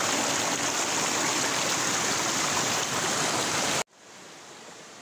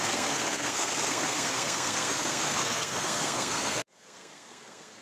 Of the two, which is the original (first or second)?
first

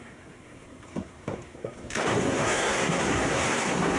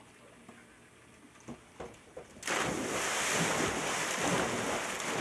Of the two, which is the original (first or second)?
second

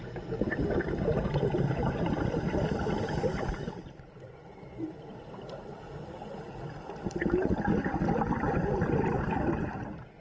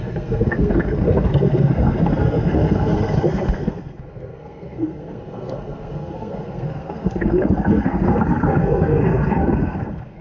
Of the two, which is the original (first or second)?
first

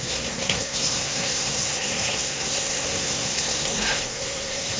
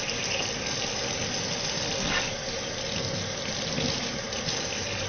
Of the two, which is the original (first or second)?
second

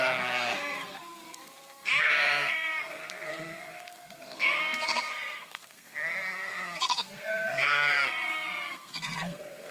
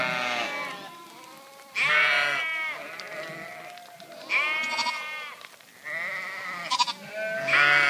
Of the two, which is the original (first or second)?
second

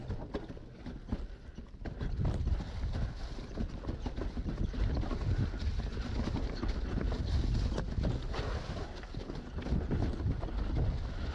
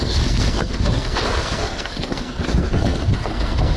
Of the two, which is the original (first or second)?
first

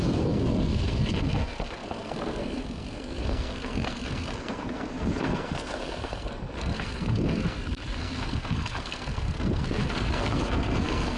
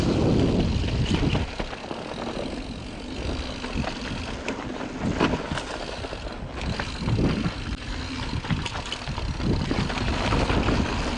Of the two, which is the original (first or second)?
second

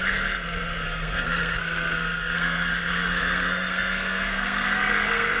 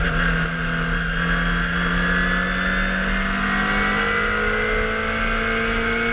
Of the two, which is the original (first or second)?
second